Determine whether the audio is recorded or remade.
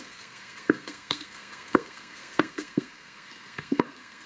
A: remade